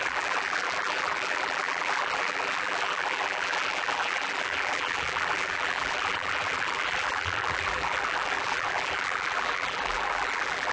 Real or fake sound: fake